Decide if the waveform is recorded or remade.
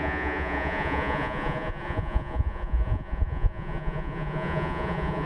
remade